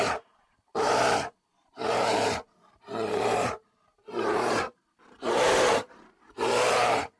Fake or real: fake